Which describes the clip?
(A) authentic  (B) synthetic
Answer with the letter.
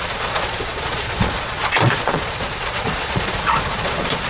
B